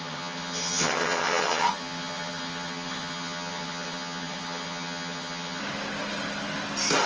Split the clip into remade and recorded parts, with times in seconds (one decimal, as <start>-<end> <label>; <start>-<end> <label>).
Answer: 0.0-5.6 remade; 5.6-7.1 recorded

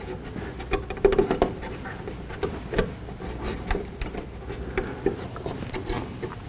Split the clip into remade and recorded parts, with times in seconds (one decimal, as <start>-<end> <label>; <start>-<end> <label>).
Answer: 0.0-1.1 recorded; 1.1-1.9 remade; 1.9-6.5 recorded